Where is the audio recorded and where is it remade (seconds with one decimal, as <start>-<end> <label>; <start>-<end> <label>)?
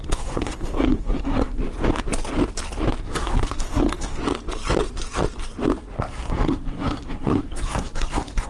0.0-1.6 remade; 1.6-3.0 recorded; 3.0-4.2 remade; 4.2-6.0 recorded; 6.0-8.5 remade